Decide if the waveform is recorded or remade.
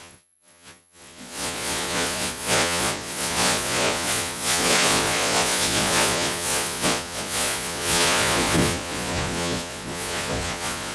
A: remade